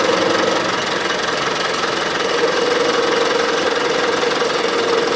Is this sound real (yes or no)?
yes